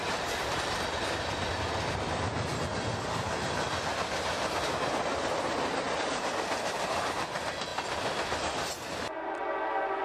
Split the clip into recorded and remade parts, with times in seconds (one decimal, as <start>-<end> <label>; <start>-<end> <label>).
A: 0.0-0.6 remade; 0.6-10.0 recorded

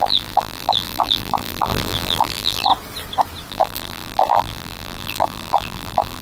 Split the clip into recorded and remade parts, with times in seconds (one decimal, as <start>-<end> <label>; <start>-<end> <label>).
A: 0.0-2.7 remade; 2.7-3.5 recorded; 3.5-6.2 remade